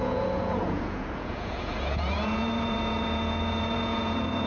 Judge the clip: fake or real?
fake